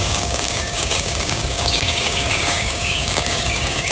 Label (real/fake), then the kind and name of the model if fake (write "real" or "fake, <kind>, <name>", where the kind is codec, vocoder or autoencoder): fake, codec, DAC